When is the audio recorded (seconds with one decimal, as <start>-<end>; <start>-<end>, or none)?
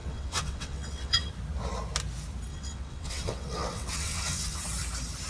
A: 1.3-2.5; 4.6-5.3